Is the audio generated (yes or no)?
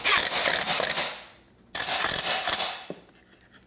no